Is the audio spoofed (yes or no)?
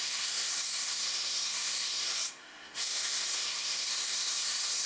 yes